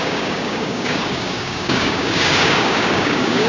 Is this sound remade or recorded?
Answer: remade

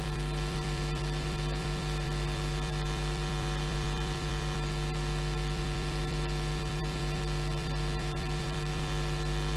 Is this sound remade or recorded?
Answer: remade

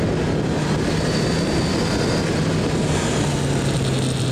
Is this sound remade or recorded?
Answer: recorded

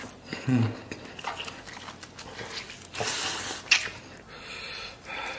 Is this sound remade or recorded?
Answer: recorded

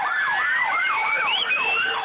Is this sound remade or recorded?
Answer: remade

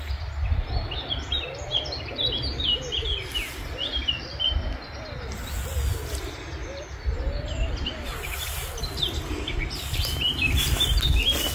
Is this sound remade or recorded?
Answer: recorded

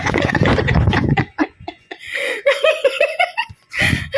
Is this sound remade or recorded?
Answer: remade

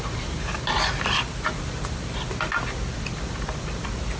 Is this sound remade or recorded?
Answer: recorded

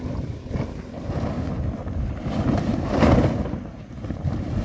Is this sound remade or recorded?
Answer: recorded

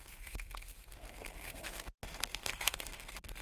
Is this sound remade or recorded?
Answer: remade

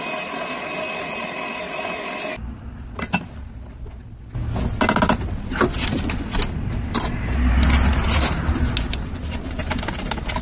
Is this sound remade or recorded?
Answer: recorded